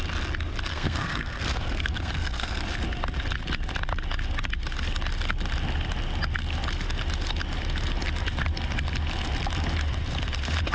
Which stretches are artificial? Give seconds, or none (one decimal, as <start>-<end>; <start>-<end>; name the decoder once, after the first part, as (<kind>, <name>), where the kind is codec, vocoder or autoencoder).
0.7-2.6 (codec, SNAC)